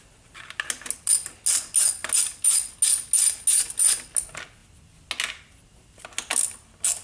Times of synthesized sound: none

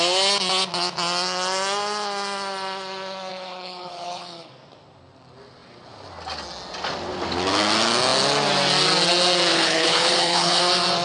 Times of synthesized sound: 3.3-4.5 (codec, HILCodec); 9.5-10.6

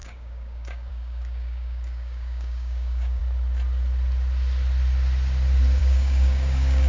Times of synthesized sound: 0.0-3.2 (codec, DAC); 5.8-6.9

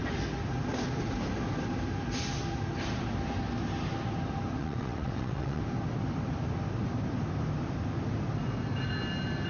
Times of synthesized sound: 4.6-5.6 (vocoder, WaveNeXt)

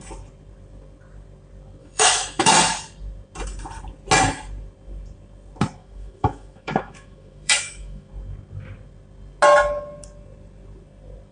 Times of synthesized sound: 1.8-2.5 (autoencoder, DAC-VAE); 5.8-8.1

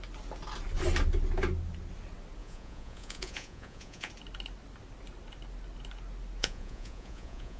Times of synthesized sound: 2.4-4.1 (vocoder, Vocos); 6.4-7.6

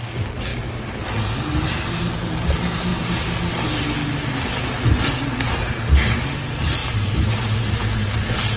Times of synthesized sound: 6.8-7.9 (vocoder, BigVGAN v2)

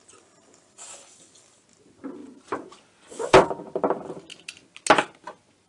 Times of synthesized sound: 2.2-4.2 (vocoder, BigVGAN v2)